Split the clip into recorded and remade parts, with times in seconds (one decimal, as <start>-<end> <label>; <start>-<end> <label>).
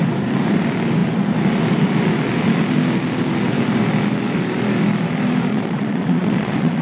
0.0-5.5 recorded; 5.5-6.8 remade